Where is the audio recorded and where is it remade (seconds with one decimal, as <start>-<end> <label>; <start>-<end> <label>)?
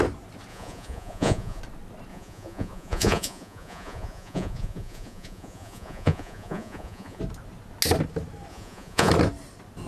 0.0-0.5 recorded; 0.5-1.6 remade; 1.6-2.1 recorded; 2.1-7.2 remade; 7.2-8.5 recorded; 8.5-9.1 remade; 9.1-9.9 recorded